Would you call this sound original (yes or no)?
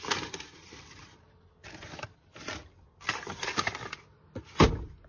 yes